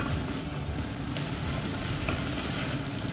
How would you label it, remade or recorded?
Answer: recorded